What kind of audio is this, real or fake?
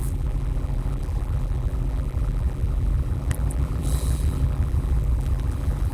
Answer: fake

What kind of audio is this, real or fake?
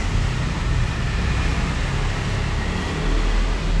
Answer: real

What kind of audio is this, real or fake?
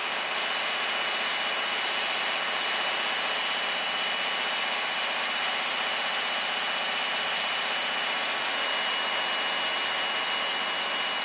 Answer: real